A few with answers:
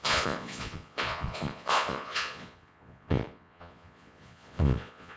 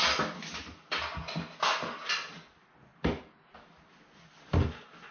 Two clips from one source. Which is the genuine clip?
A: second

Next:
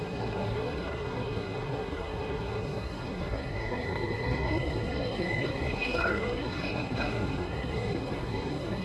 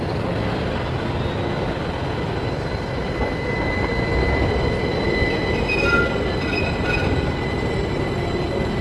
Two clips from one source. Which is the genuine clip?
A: second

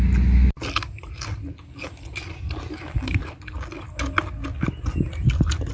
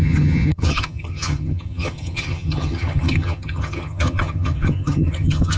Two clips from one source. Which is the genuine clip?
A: first